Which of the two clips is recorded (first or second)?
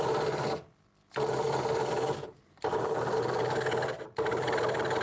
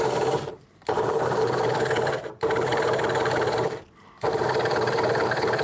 first